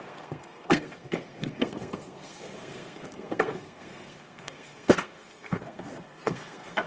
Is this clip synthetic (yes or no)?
yes